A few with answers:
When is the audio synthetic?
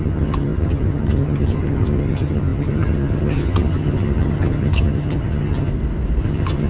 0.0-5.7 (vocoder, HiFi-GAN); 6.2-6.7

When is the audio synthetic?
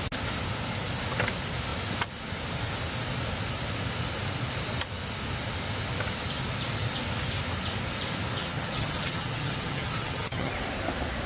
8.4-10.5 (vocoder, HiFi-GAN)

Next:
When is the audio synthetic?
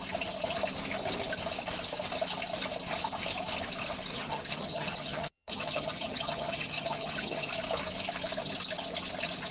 4.1-7.5 (vocoder, HiFi-GAN)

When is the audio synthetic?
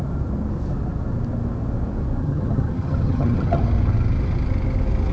2.2-3.6 (vocoder, HiFi-GAN)